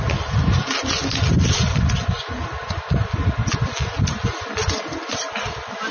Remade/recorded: recorded